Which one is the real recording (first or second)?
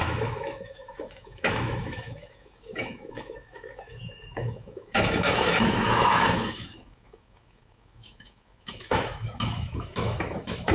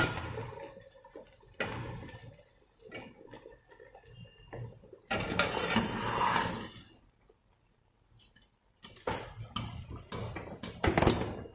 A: second